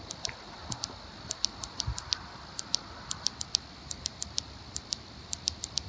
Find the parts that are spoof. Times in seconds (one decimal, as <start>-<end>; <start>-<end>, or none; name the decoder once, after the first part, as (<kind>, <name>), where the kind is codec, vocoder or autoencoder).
none